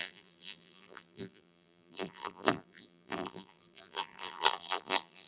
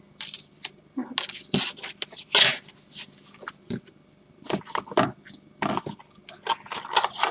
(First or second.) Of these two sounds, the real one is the second